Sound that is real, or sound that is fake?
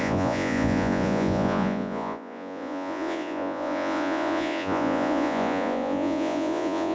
fake